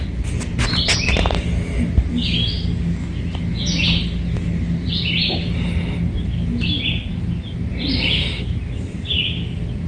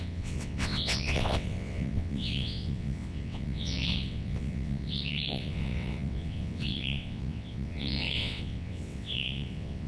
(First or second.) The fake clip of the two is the second